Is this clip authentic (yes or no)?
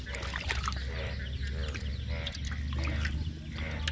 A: yes